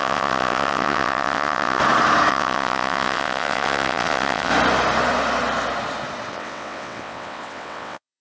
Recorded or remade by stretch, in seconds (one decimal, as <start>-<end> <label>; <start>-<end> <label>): 0.0-1.8 remade; 1.8-2.3 recorded; 2.3-4.5 remade; 4.5-6.3 recorded; 6.3-8.2 remade